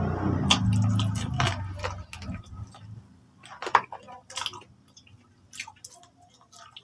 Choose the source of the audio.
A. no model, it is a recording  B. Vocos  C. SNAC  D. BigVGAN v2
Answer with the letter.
A